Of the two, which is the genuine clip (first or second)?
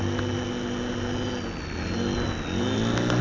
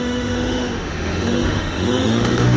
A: first